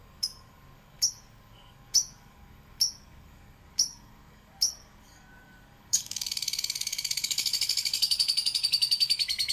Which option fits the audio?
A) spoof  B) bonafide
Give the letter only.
A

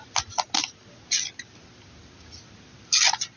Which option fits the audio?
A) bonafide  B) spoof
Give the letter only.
A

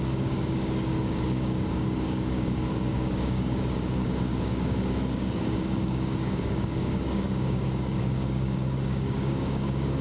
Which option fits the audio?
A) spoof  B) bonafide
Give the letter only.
A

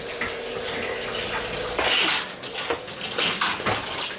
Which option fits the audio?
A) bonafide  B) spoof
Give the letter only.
A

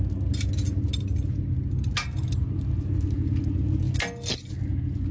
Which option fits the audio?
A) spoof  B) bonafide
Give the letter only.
B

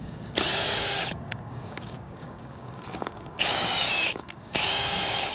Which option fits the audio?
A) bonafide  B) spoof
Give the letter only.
B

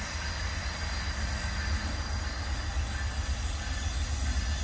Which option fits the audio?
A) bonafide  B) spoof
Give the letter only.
A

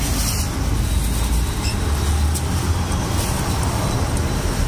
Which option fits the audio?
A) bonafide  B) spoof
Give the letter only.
A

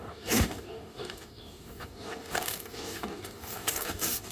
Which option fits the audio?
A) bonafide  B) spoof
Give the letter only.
B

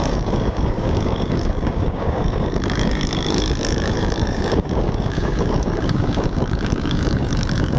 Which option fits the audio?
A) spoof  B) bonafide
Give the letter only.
A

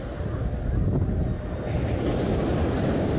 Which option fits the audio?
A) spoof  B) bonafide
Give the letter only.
B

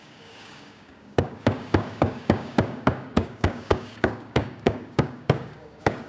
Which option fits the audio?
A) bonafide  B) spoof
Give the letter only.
B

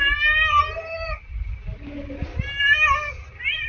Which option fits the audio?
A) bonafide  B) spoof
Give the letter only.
A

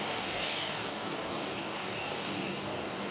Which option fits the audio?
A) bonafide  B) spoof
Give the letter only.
B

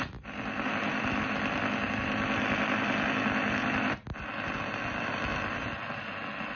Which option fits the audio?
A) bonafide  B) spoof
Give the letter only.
A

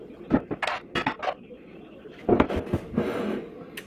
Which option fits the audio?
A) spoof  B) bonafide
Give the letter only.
B